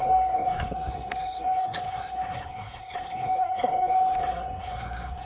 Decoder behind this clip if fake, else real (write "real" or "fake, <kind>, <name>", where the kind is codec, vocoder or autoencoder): fake, codec, SNAC